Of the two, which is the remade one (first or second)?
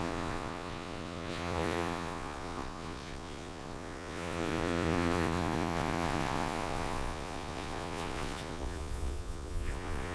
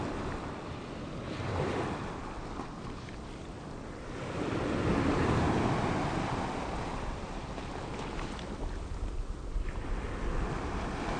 first